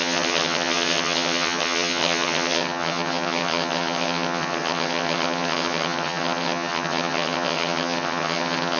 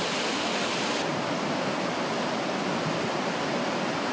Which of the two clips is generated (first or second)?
first